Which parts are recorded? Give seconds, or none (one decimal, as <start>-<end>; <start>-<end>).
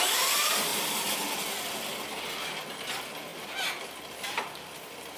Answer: 0.0-5.2